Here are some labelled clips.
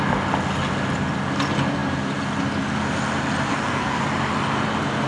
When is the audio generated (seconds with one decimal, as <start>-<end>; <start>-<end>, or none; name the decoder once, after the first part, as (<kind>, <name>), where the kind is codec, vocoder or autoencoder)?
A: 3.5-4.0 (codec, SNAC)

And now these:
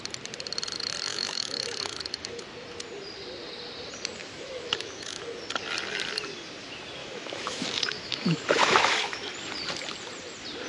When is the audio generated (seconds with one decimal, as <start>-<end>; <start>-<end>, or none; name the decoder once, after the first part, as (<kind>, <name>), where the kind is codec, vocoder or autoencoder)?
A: 1.1-2.4 (autoencoder, DAC-VAE); 4.2-5.4; 7.0-9.3

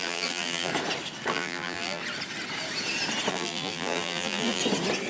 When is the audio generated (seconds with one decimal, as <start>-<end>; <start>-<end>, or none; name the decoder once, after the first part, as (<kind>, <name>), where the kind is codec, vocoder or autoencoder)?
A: 0.0-0.7 (vocoder, BigVGAN v2); 1.3-2.0; 3.3-4.6

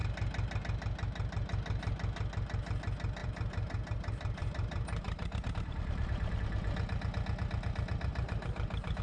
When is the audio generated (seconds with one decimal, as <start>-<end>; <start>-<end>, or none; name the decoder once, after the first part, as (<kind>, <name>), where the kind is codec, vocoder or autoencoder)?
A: 3.2-6.4 (vocoder, BigVGAN v2); 8.1-9.0

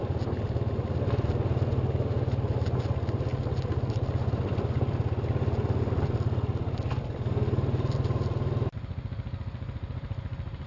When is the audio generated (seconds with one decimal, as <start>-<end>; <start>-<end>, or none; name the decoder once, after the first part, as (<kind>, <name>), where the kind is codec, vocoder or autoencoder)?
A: none